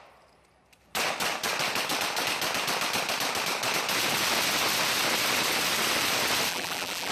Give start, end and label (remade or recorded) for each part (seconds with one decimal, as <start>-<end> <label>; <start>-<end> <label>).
0.0-6.5 recorded; 6.5-7.1 remade